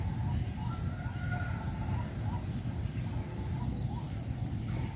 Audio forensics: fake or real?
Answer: real